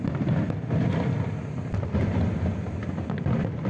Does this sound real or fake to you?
real